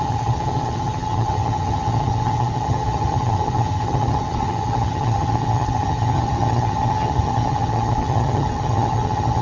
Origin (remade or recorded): remade